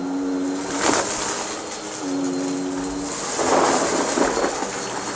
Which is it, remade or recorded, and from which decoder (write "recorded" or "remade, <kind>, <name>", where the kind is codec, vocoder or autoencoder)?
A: recorded